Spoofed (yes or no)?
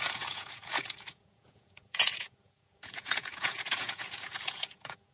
yes